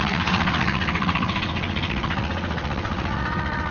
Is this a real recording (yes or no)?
no